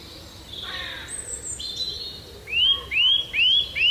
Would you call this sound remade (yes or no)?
no